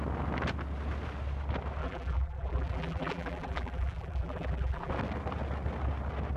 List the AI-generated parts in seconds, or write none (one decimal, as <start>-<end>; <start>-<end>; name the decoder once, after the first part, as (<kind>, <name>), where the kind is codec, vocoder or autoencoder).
1.8-4.9 (vocoder, BigVGAN v2)